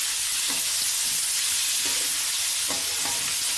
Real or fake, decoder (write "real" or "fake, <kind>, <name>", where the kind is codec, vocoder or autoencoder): real